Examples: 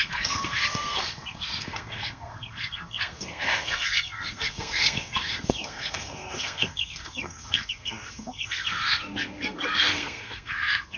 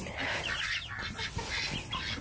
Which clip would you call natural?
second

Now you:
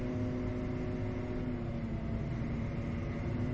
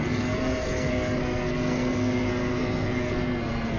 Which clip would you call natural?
first